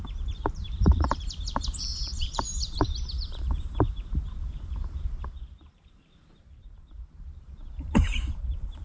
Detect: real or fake fake